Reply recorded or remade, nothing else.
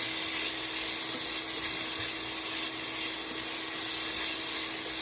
recorded